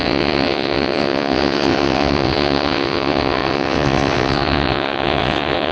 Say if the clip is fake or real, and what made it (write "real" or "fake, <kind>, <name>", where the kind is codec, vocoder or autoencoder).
fake, vocoder, WaveNeXt